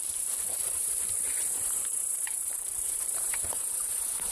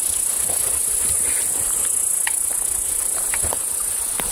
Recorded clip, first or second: second